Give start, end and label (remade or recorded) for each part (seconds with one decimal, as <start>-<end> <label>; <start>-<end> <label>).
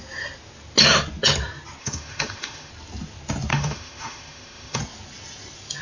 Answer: 0.0-1.8 recorded; 1.8-2.7 remade; 2.7-3.5 recorded; 3.5-4.8 remade; 4.8-5.8 recorded